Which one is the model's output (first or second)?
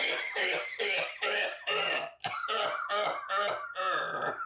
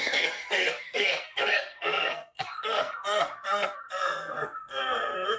second